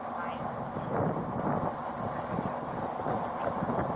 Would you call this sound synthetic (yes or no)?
no